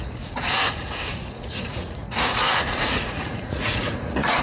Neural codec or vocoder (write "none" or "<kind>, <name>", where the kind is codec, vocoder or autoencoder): vocoder, Vocos